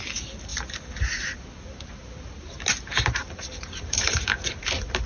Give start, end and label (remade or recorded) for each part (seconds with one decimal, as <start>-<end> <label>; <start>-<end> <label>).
0.0-3.2 recorded; 3.2-4.2 remade; 4.2-5.1 recorded